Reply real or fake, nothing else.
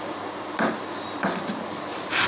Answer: real